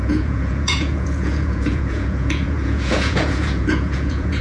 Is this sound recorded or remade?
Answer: remade